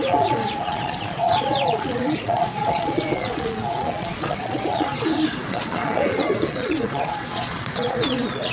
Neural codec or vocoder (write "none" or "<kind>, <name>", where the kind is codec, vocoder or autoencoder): vocoder, Vocos